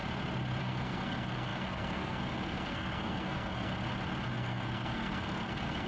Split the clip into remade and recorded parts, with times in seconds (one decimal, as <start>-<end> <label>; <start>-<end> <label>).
0.0-0.6 recorded; 0.6-3.7 remade; 3.7-4.3 recorded; 4.3-5.9 remade